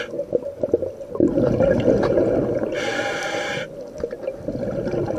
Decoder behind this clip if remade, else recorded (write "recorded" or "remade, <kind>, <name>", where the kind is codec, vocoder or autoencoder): recorded